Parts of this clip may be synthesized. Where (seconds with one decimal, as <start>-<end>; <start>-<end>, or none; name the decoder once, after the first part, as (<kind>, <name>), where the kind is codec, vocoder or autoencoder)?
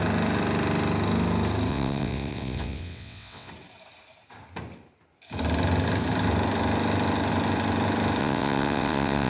1.7-3.5 (vocoder, WaveNeXt); 8.2-9.3